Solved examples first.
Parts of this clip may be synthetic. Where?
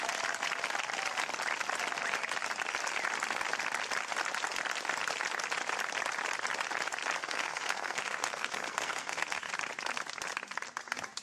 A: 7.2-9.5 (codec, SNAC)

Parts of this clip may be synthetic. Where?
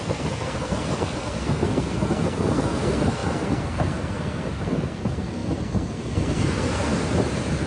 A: 0.0-6.9 (codec, SNAC)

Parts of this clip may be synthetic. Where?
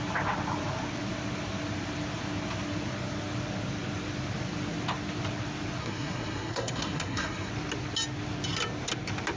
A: 5.8-7.5 (codec, SNAC)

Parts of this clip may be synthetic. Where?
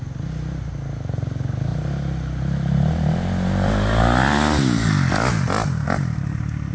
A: none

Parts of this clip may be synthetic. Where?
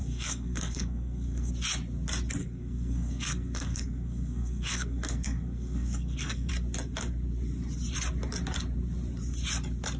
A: 0.0-1.5 (codec, SNAC); 2.4-6.5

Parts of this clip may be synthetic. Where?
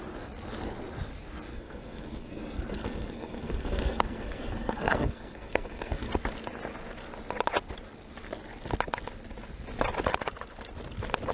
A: 1.5-6.1 (codec, SNAC)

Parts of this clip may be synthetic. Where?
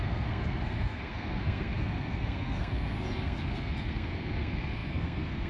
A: 0.0-5.5 (codec, SNAC)